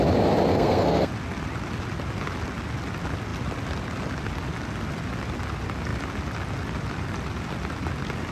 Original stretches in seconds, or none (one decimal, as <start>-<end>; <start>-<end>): 0.0-0.5; 1.1-8.3